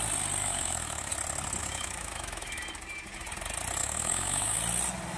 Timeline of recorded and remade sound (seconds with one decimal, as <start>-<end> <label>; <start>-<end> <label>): 0.0-0.4 recorded; 0.4-1.1 remade; 1.1-1.6 recorded; 1.6-2.6 remade; 2.6-3.8 recorded; 3.8-4.6 remade; 4.6-5.2 recorded